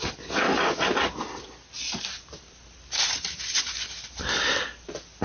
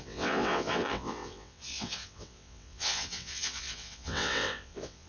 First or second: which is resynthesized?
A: second